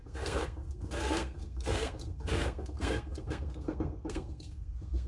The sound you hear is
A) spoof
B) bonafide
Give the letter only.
A